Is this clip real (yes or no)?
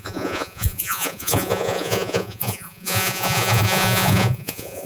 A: no